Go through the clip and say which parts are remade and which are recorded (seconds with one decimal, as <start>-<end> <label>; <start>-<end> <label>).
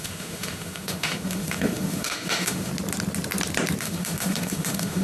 0.0-2.7 remade; 2.7-3.8 recorded; 3.8-5.0 remade